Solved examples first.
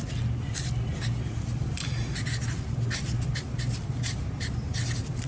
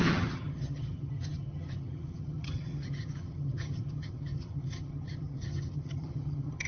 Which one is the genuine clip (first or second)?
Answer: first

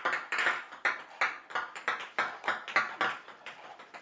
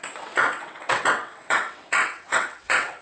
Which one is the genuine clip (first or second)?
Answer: first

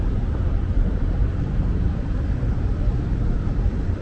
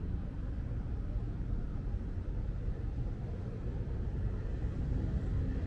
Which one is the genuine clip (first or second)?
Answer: second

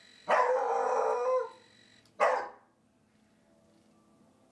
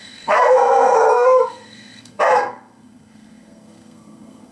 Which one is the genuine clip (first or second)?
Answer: first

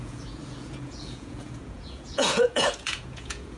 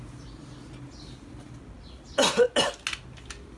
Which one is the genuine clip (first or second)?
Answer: second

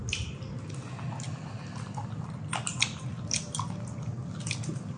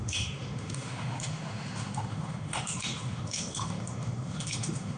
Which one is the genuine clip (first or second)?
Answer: first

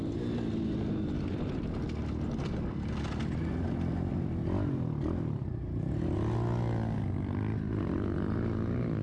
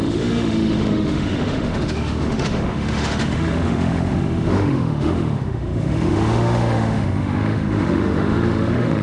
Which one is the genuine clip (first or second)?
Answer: first